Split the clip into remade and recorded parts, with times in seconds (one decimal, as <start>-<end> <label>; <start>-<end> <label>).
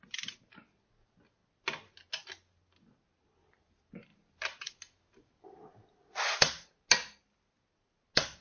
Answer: 0.0-8.4 recorded